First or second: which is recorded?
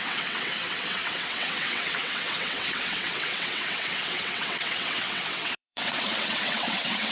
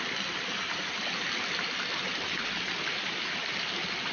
second